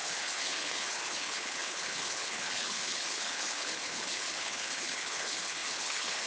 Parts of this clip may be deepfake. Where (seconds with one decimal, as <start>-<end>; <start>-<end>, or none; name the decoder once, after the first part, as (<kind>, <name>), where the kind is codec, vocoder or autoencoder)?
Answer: 0.0-6.3 (codec, HILCodec)